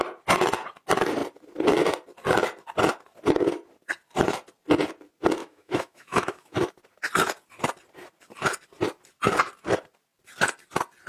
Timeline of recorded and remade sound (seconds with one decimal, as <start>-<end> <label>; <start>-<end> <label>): 0.0-5.4 recorded; 5.4-6.7 remade; 6.7-11.1 recorded